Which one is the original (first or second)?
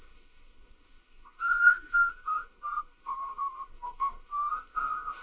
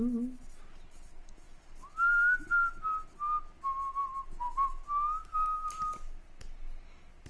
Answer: second